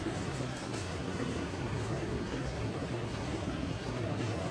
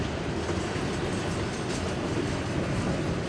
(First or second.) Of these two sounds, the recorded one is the second